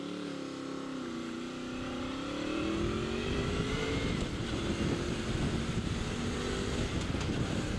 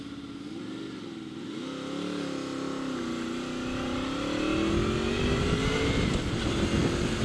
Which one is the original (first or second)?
second